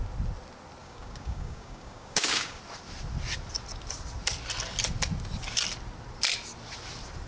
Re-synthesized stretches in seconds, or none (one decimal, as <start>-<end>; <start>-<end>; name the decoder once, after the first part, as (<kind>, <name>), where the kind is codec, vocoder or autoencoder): 0.8-2.6 (codec, DAC)